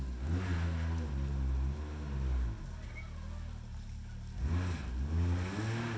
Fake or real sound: real